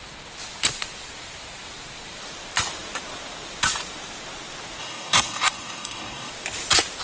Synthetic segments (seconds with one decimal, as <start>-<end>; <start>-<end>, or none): 4.8-6.3